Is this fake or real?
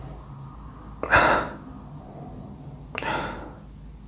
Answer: real